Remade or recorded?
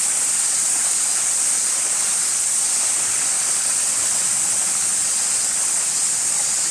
recorded